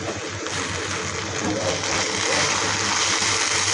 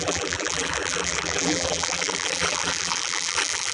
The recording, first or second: first